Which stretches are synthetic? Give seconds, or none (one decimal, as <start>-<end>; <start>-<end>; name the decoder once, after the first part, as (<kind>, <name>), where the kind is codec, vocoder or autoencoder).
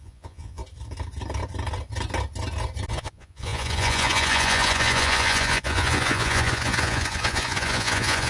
0.0-0.6 (vocoder, Vocos); 2.9-8.3